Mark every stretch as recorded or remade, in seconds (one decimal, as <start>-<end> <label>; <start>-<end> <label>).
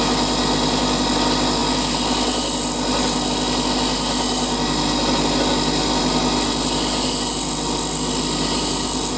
0.0-9.2 recorded